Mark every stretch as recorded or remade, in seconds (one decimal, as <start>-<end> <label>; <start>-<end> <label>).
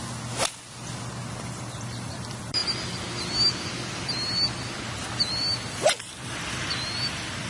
0.0-1.3 recorded; 1.3-2.6 remade; 2.6-5.3 recorded; 5.3-7.5 remade